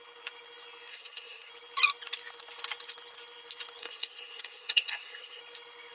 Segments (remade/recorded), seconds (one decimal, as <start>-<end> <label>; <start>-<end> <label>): 0.0-0.9 recorded; 0.9-1.5 remade; 1.5-3.8 recorded; 3.8-5.4 remade; 5.4-5.9 recorded